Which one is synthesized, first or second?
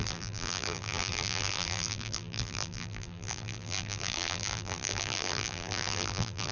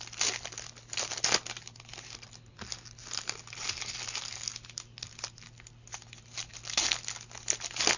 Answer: first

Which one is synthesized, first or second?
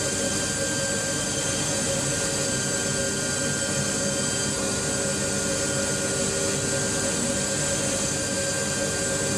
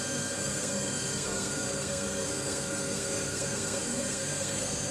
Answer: second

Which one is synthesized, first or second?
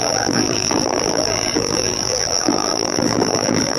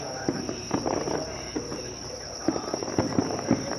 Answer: first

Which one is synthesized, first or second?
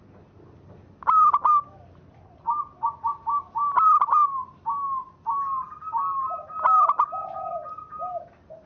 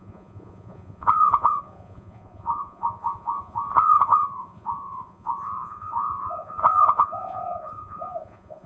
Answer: second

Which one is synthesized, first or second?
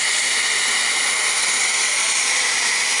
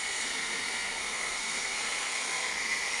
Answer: second